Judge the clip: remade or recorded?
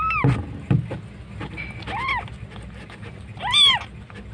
recorded